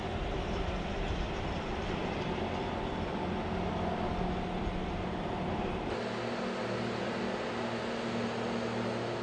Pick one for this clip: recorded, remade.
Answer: recorded